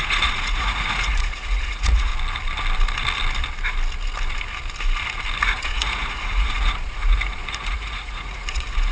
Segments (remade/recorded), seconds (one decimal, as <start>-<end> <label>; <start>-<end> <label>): 0.0-2.1 remade; 2.1-5.4 recorded; 5.4-8.9 remade